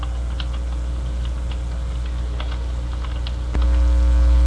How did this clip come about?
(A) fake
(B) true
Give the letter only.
B